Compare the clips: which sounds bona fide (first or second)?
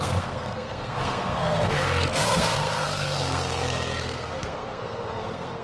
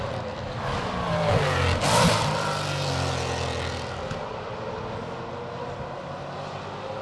second